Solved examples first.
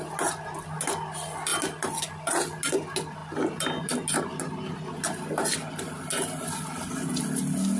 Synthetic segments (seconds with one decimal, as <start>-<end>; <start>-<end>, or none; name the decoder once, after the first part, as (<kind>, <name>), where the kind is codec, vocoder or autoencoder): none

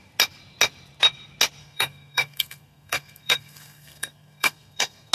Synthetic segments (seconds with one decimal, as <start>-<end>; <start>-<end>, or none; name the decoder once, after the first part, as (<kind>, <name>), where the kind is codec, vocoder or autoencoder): 1.6-5.1 (codec, SNAC)

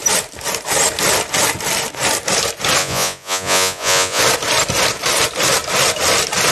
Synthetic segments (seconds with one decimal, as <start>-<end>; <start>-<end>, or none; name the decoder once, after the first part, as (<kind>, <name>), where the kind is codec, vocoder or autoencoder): 2.8-4.2 (vocoder, Vocos)

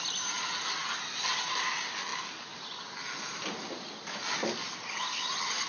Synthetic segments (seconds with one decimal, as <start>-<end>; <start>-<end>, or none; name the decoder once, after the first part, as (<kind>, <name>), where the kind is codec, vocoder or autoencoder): none

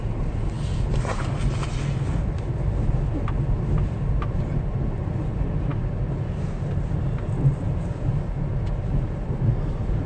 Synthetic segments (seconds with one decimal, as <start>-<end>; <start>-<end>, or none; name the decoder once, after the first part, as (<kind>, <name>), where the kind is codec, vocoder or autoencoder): none

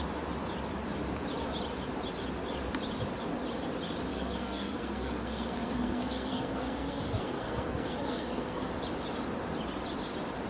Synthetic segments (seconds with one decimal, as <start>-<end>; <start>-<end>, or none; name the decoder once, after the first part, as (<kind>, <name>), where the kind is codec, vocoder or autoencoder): 4.1-8.7 (codec, SNAC)

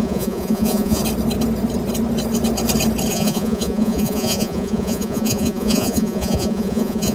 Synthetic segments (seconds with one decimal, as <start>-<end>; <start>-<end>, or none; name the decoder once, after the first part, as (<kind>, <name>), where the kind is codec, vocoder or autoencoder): 0.0-1.0 (vocoder, Vocos); 3.1-7.1